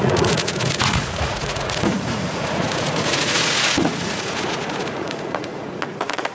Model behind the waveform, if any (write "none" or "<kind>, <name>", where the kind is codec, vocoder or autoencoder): vocoder, Vocos